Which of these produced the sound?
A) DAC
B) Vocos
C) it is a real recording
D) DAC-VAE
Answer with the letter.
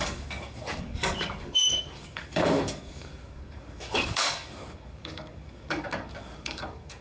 A